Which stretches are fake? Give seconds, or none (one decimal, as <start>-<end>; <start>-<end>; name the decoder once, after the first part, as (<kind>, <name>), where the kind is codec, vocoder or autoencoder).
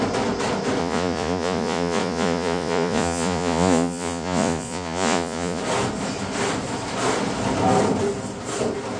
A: 0.8-5.6 (vocoder, Vocos)